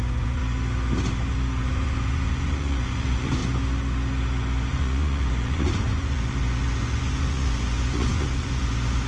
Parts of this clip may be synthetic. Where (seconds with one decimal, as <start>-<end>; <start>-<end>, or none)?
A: 0.0-0.4; 1.6-3.4; 4.7-9.1